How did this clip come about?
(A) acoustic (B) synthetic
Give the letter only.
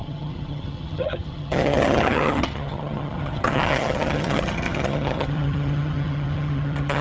B